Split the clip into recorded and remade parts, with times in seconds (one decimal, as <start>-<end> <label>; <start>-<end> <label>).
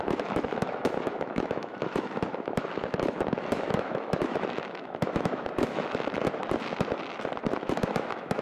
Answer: 0.0-6.4 remade; 6.4-7.5 recorded; 7.5-8.4 remade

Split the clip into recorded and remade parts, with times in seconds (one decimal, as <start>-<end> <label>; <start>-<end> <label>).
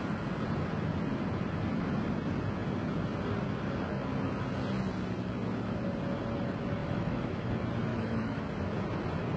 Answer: 0.0-6.8 recorded; 6.8-7.5 remade; 7.5-7.9 recorded; 7.9-8.4 remade; 8.4-9.4 recorded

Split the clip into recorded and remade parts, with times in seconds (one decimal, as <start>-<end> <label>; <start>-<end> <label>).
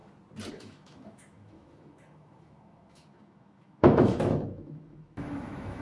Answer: 0.0-0.5 recorded; 0.5-5.8 remade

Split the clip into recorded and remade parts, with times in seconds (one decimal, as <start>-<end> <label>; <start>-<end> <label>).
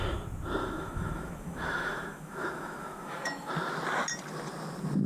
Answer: 0.0-0.6 recorded; 0.6-3.5 remade; 3.5-5.1 recorded